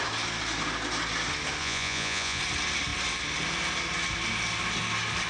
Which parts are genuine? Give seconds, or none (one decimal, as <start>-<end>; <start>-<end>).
0.0-1.6; 2.4-5.3